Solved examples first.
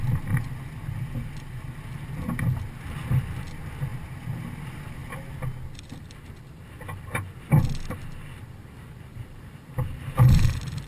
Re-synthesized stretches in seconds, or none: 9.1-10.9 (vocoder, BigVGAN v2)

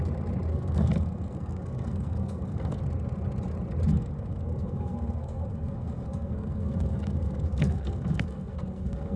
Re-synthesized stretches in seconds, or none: 0.5-2.8 (codec, SNAC); 3.9-9.2

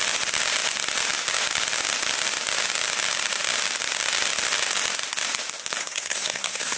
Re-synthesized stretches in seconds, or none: 5.8-6.8 (codec, SNAC)

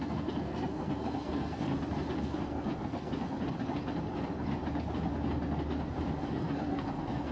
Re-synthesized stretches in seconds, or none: 0.0-1.7 (codec, SNAC); 2.2-3.1; 6.3-7.3

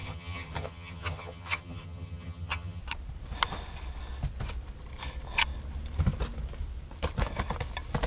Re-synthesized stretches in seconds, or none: 0.0-2.8 (vocoder, HiFi-GAN)

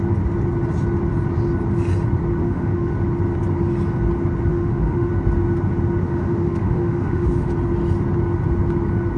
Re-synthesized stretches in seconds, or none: 2.4-2.9 (autoencoder, DAC-VAE); 4.5-5.1; 6.0-7.5

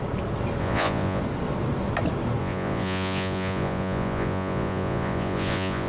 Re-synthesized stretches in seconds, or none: 0.6-1.2 (vocoder, Vocos); 2.4-5.9